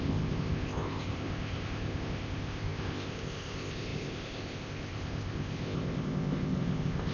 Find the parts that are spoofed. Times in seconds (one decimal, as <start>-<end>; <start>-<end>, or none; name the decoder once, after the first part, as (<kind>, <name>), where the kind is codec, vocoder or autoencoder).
0.0-7.1 (codec, ZipCodec)